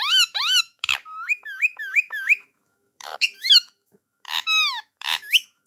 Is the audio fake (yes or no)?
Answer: yes